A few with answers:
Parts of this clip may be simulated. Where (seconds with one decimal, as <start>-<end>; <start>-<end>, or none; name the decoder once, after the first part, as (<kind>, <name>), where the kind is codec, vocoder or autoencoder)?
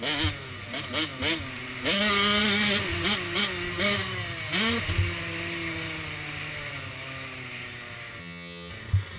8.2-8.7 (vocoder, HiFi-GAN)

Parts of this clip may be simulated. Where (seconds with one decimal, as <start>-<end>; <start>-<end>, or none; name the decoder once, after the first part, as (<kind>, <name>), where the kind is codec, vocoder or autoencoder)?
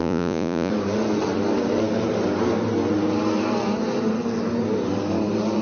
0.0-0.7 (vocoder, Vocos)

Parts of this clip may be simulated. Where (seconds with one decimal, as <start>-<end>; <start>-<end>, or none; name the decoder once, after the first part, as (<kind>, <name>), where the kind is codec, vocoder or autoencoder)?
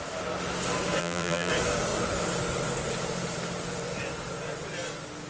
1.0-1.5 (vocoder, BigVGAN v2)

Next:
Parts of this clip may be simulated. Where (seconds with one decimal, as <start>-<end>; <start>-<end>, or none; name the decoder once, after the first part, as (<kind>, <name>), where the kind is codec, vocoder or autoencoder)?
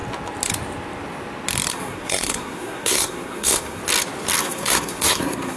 1.7-3.8 (codec, SNAC); 4.4-5.6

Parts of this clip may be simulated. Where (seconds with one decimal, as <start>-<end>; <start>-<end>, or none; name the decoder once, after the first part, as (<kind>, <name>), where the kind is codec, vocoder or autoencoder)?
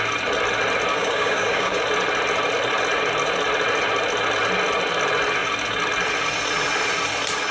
0.9-1.8 (codec, DAC)